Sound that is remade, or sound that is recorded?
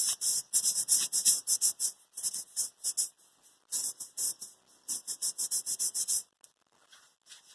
recorded